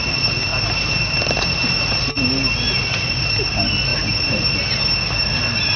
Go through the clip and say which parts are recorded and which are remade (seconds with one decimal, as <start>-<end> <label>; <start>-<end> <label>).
0.0-5.8 recorded